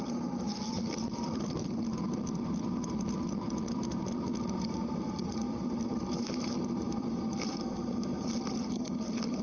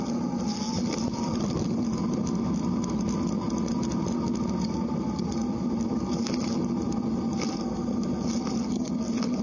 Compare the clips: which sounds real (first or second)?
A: second